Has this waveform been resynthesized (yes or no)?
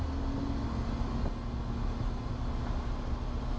no